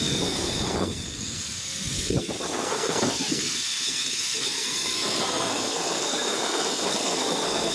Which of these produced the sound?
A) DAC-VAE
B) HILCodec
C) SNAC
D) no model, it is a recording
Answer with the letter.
C